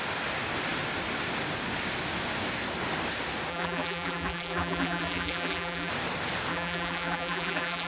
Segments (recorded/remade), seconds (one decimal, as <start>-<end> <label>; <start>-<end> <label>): 0.0-3.5 recorded; 3.5-5.9 remade; 5.9-6.5 recorded; 6.5-7.9 remade